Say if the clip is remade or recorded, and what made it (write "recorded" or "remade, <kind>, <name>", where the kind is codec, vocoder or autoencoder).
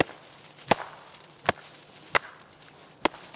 recorded